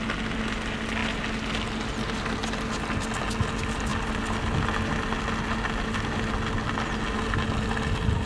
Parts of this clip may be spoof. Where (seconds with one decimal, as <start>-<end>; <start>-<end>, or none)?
none